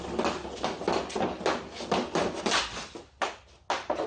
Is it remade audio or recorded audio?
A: recorded